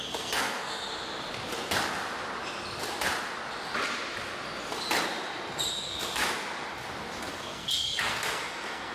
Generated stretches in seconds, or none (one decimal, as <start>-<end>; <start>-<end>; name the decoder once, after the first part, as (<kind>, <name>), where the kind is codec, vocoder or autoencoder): 0.0-0.9 (codec, SNAC); 5.7-6.2; 7.2-8.9